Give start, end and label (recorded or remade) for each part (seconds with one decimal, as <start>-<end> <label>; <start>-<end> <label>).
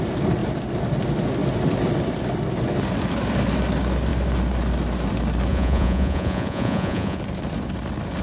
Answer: 0.0-5.5 recorded; 5.5-7.2 remade; 7.2-8.2 recorded